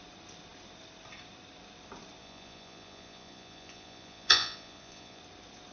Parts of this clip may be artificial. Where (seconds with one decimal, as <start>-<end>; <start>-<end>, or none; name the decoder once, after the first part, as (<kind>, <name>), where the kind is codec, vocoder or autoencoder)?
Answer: 2.2-5.2 (vocoder, Vocos)